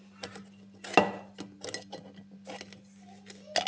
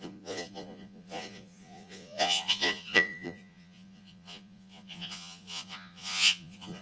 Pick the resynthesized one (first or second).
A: second